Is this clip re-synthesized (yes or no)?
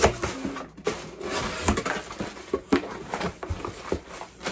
no